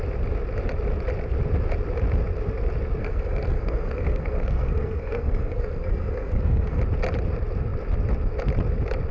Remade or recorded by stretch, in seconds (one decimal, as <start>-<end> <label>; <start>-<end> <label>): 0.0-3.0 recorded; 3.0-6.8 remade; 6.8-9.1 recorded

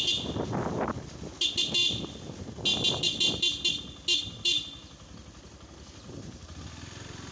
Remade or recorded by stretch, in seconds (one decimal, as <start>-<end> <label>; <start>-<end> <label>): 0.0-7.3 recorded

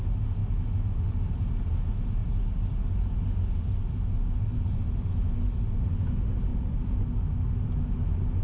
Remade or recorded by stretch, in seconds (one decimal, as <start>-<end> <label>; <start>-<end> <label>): 0.0-6.5 recorded; 6.5-7.1 remade; 7.1-8.4 recorded

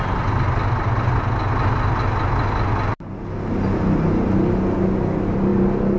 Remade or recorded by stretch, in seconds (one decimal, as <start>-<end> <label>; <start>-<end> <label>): 0.0-6.0 recorded

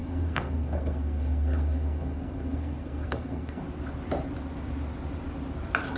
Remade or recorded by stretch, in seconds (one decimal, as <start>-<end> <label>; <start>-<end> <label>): 0.0-3.6 remade; 3.6-6.0 recorded

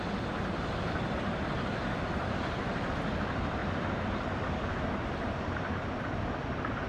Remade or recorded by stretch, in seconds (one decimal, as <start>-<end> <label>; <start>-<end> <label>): 0.0-3.6 recorded; 3.6-4.5 remade; 4.5-5.2 recorded; 5.2-5.9 remade; 5.9-6.9 recorded

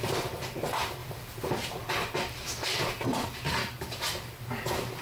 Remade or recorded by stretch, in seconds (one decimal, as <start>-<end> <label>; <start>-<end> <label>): 0.0-5.0 recorded